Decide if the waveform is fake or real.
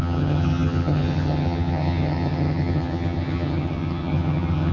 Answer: fake